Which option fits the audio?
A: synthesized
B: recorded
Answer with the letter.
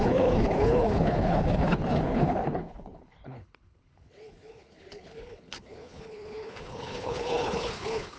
A